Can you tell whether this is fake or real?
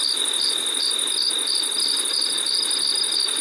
real